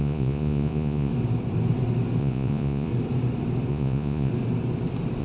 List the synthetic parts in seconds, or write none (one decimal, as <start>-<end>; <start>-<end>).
0.0-1.1; 2.2-2.9; 3.7-4.3